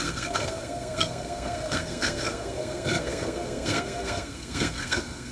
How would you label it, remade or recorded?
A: remade